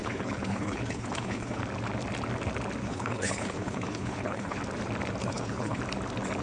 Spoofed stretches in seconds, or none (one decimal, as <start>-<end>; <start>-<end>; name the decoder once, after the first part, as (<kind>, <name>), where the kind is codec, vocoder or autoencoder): 0.0-1.6 (codec, HILCodec); 2.8-4.6; 5.2-5.8